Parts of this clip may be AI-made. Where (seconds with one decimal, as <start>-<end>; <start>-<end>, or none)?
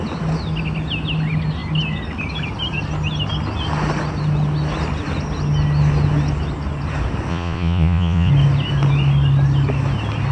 7.3-8.3